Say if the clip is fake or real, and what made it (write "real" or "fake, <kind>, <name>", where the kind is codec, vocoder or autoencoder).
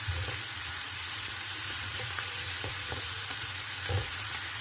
fake, vocoder, Vocos